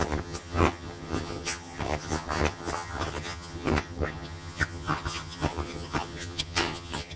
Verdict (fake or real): fake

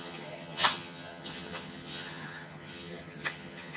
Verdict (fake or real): fake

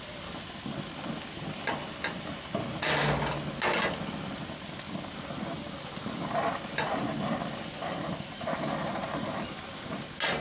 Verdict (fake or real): real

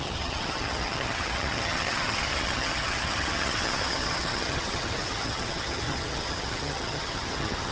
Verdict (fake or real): fake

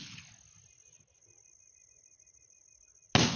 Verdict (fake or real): real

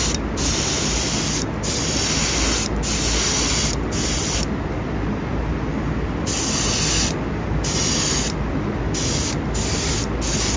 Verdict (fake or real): real